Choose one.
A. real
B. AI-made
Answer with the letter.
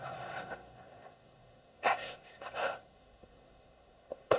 B